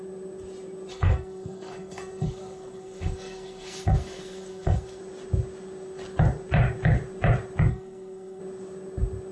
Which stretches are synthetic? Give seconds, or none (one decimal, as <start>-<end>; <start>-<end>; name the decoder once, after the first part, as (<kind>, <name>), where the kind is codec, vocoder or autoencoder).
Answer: 0.9-5.0 (codec, SNAC); 7.7-8.4